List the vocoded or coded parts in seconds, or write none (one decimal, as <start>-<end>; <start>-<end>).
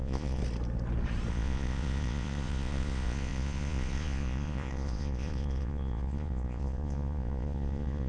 0.0-0.4; 1.3-8.1